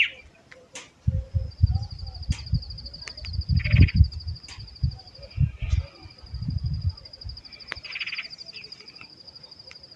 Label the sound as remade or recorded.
recorded